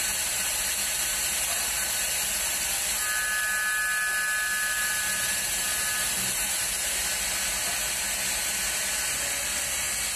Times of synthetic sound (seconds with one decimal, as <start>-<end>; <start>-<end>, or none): 0.0-2.9; 4.8-7.0